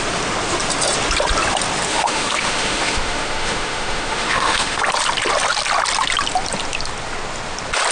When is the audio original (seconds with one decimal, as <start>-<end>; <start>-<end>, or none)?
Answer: 0.0-1.9; 4.8-7.9